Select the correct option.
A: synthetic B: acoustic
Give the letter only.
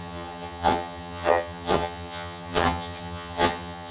A